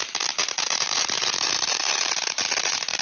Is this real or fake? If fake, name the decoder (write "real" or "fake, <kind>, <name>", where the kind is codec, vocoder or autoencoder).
fake, vocoder, BigVGAN v2